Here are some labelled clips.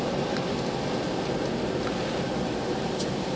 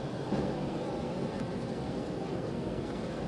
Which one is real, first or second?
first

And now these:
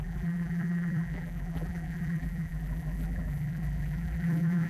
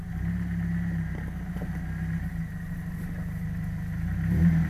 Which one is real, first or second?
second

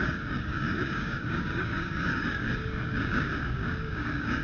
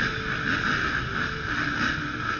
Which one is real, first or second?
second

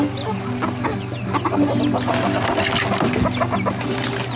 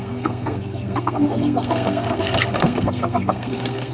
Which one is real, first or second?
first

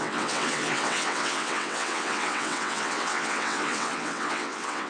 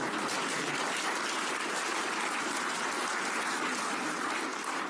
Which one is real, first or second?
second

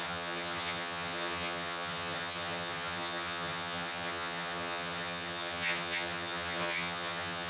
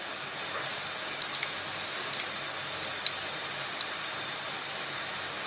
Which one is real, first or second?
second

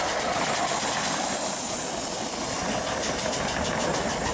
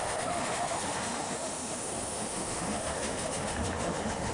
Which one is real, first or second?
first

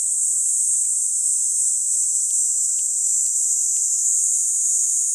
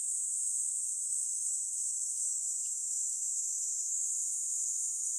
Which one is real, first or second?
first